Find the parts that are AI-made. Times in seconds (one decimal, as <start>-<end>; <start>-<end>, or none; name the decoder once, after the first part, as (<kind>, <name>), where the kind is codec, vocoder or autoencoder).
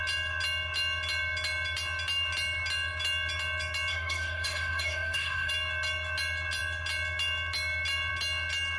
3.9-5.5 (autoencoder, DAC-VAE)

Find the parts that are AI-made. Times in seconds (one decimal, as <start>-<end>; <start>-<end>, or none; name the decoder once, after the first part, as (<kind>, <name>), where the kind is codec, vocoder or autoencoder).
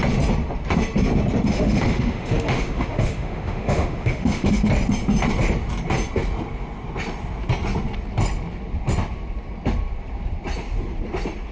1.5-4.7 (autoencoder, DAC-VAE)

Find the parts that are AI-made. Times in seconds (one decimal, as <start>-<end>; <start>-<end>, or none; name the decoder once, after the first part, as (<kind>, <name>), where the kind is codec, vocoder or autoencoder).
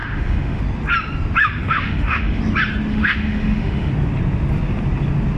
0.0-0.6 (autoencoder, DAC-VAE); 1.4-2.4; 2.9-3.9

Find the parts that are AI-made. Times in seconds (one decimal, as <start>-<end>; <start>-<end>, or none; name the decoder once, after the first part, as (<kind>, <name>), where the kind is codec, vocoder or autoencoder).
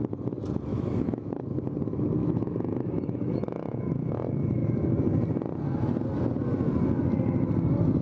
0.7-1.3 (autoencoder, DAC-VAE); 2.2-4.1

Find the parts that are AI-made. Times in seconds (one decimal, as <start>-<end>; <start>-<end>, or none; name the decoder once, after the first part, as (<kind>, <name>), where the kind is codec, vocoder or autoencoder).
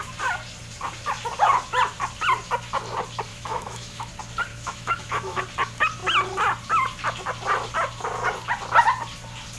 3.3-4.1 (autoencoder, DAC-VAE); 4.5-5.4